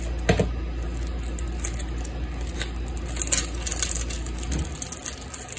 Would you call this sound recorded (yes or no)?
yes